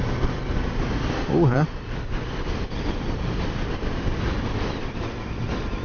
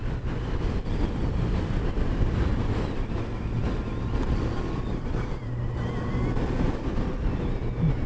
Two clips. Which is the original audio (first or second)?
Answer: second